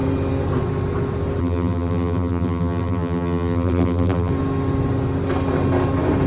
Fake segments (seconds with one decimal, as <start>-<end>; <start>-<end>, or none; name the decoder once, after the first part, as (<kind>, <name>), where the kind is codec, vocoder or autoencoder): 1.4-4.3 (vocoder, BigVGAN v2)